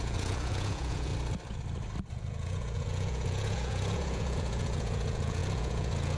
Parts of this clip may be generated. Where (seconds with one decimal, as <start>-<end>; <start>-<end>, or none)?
0.0-1.1; 2.1-6.2